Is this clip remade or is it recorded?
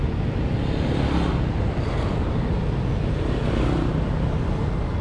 recorded